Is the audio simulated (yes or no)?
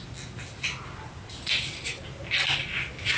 no